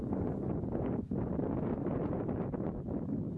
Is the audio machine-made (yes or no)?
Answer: no